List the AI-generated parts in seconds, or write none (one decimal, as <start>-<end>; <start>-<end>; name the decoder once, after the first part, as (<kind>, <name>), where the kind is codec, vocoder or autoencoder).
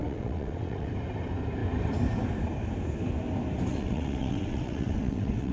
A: 0.0-0.9 (vocoder, WaveNeXt); 3.7-5.5